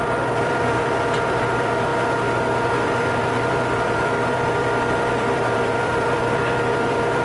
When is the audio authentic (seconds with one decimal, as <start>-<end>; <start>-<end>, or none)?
1.9-2.7